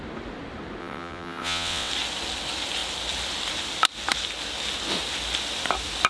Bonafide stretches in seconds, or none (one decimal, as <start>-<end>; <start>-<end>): 0.0-0.8; 1.9-6.1